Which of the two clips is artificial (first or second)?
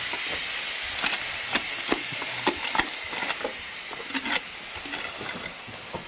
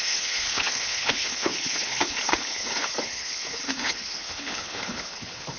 second